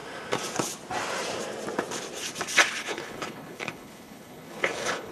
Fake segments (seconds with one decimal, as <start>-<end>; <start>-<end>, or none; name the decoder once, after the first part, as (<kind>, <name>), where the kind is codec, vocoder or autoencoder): 2.8-5.1 (codec, HILCodec)